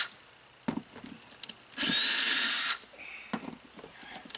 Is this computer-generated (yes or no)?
no